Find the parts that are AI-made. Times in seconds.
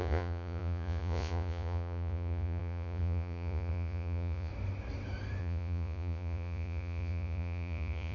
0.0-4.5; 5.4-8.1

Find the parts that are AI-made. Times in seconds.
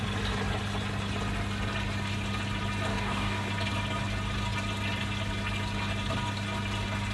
2.9-3.5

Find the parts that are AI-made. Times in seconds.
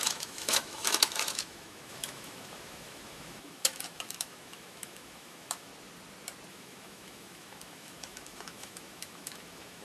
0.0-5.7; 6.5-9.8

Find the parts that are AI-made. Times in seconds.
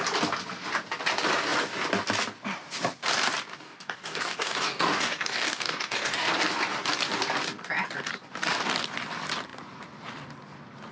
3.5-6.3